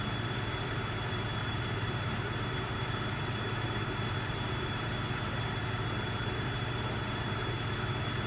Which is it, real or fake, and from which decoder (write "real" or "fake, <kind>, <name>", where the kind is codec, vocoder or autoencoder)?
fake, vocoder, BigVGAN v2